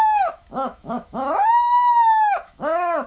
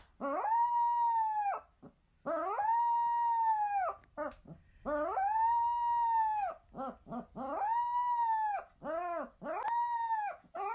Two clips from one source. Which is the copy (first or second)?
first